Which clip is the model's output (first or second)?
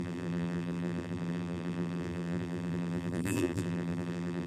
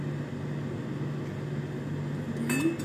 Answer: first